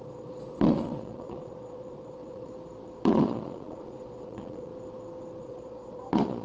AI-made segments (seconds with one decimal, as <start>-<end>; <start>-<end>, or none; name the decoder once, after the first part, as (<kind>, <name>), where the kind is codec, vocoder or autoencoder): 0.0-2.5 (vocoder, Vocos); 3.0-4.7; 5.4-6.4